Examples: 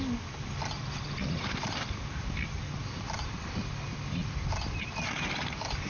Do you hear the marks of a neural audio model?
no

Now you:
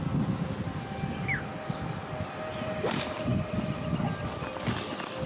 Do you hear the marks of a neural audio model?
no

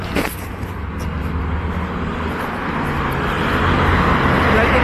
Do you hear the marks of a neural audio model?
no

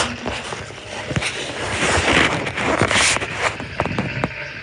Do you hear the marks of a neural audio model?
no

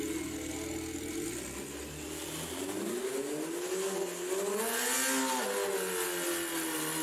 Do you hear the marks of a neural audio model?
no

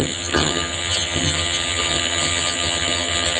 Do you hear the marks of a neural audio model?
yes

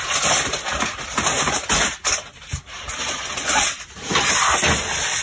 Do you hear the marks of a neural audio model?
no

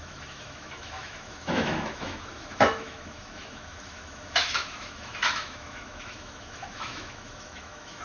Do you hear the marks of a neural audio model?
yes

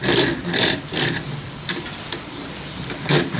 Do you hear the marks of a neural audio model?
yes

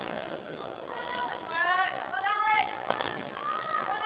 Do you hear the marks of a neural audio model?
yes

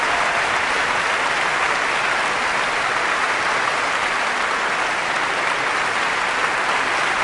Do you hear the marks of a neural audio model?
no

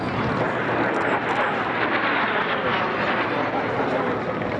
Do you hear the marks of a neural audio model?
no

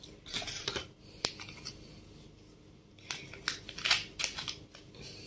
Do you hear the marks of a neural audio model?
no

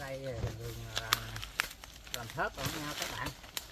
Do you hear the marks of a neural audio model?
no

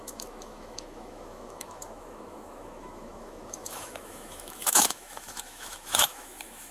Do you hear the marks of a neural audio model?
yes